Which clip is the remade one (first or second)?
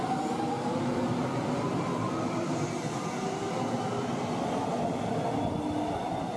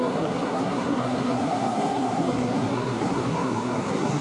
second